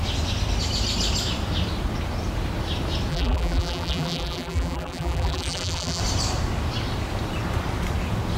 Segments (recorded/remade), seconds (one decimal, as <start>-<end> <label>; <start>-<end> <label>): 0.0-3.1 recorded; 3.1-6.0 remade; 6.0-8.4 recorded